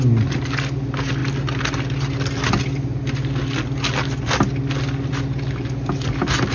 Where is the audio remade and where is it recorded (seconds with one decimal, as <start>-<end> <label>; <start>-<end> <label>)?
0.0-6.5 recorded